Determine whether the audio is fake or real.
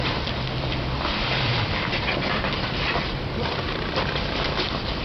fake